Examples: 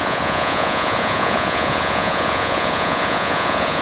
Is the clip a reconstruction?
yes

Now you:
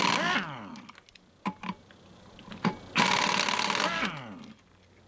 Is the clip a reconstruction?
no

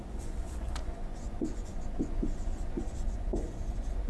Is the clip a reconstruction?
yes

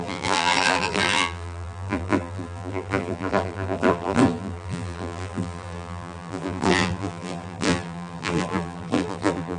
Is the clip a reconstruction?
yes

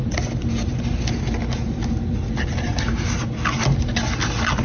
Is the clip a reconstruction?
no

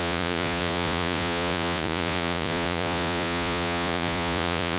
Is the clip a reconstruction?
yes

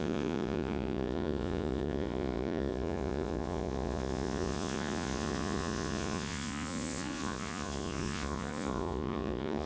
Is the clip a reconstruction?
yes